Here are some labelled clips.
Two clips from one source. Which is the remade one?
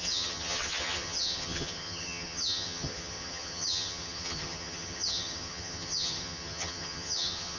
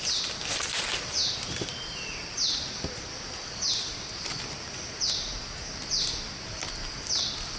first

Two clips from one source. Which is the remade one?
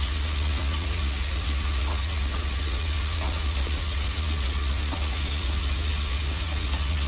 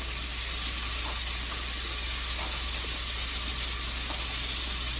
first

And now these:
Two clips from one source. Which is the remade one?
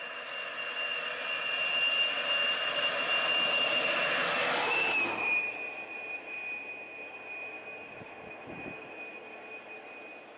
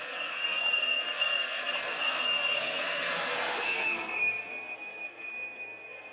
second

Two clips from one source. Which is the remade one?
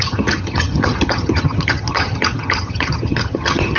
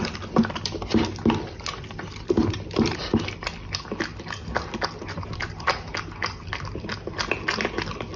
first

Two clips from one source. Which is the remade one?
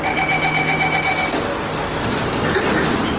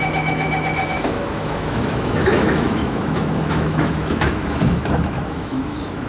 second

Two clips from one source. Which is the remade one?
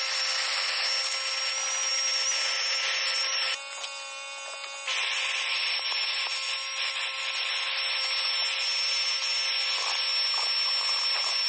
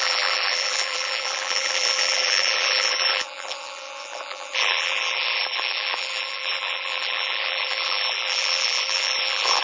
second